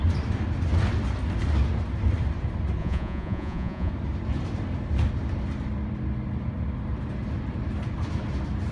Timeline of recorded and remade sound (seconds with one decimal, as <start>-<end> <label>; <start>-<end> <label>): 0.0-2.8 recorded; 2.8-3.9 remade; 3.9-8.7 recorded